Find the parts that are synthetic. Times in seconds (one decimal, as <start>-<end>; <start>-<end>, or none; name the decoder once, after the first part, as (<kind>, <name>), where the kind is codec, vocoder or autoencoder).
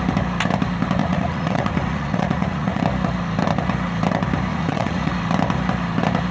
1.0-2.8 (vocoder, Vocos); 4.5-5.1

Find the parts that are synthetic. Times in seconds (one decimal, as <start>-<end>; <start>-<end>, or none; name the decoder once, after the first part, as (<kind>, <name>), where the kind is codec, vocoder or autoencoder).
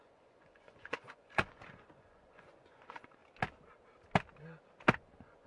0.0-3.2 (vocoder, Vocos); 5.0-5.5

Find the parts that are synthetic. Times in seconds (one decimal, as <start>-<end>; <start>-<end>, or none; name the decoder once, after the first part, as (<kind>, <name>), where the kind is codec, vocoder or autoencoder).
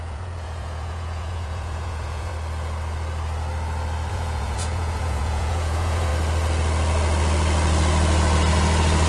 0.0-2.3 (vocoder, Vocos); 4.1-6.1